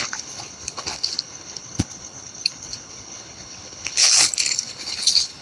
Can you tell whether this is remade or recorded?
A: remade